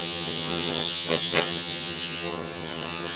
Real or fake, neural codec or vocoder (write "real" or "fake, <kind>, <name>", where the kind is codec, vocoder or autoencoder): fake, vocoder, HiFi-GAN